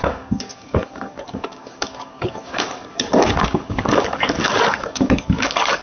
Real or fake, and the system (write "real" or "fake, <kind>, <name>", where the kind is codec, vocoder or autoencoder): fake, codec, DAC